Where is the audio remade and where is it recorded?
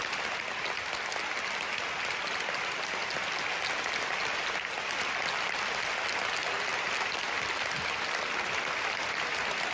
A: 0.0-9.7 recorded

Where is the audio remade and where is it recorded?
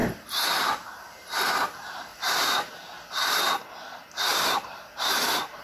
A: 0.0-1.5 remade; 1.5-2.1 recorded; 2.1-2.7 remade; 2.7-4.3 recorded; 4.3-5.6 remade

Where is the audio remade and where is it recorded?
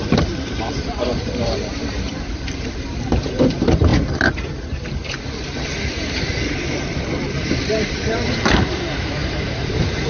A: 0.0-3.9 remade; 3.9-7.6 recorded; 7.6-10.1 remade